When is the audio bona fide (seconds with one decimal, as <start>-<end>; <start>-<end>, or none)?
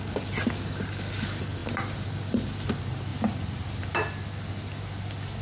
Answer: 0.0-5.4